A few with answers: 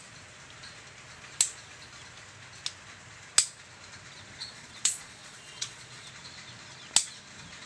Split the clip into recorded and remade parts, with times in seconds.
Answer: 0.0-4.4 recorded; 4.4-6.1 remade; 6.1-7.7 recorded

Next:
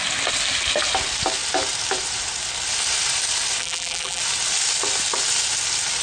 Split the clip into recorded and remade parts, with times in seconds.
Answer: 0.0-3.6 recorded; 3.6-4.2 remade; 4.2-6.0 recorded

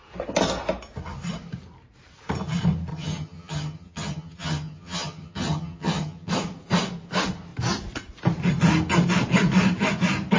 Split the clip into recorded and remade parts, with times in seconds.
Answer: 0.0-2.9 recorded; 2.9-6.3 remade; 6.3-10.4 recorded

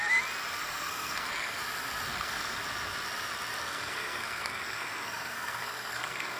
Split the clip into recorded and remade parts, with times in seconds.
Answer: 0.0-0.6 recorded; 0.6-1.6 remade; 1.6-2.1 recorded; 2.1-2.6 remade; 2.6-3.6 recorded; 3.6-6.4 remade